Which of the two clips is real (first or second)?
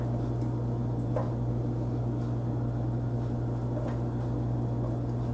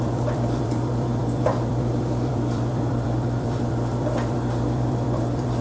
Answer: first